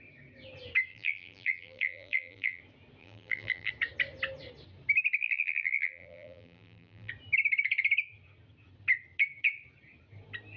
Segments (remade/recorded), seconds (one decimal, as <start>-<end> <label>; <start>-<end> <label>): 0.0-0.9 recorded; 0.9-2.6 remade; 2.6-3.0 recorded; 3.0-3.7 remade; 3.7-5.2 recorded; 5.2-7.1 remade; 7.1-10.6 recorded